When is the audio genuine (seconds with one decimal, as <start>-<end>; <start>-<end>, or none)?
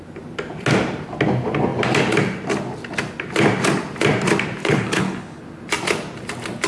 0.0-4.6; 5.4-6.7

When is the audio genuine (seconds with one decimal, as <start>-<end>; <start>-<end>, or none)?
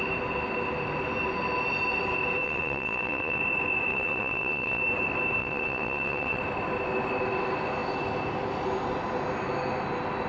0.0-2.4; 3.4-3.9; 4.8-5.4; 6.4-10.3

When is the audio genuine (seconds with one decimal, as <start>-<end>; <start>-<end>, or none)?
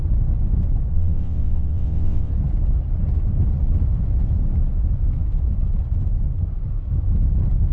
0.0-0.9; 2.3-7.7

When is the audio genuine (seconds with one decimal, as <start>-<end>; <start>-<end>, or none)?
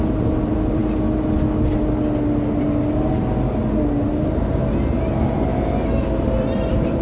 0.8-5.0; 5.5-6.2